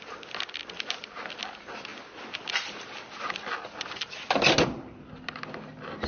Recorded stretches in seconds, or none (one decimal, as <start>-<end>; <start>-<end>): 0.0-6.1